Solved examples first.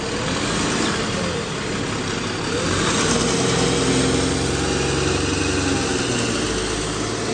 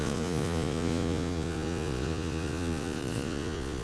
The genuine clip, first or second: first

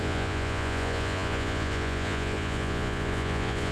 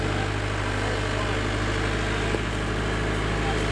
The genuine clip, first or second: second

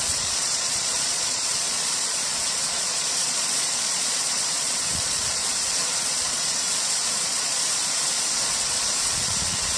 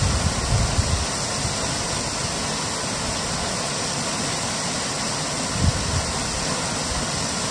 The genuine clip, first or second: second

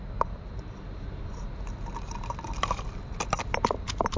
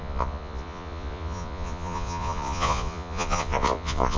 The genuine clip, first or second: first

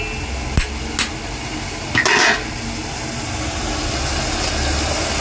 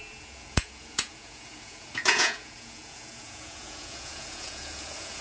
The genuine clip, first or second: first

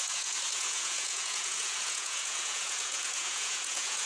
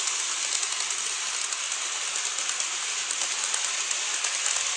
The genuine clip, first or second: second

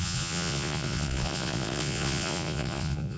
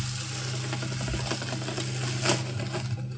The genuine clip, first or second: second